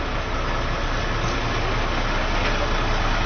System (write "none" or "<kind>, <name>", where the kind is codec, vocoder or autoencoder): none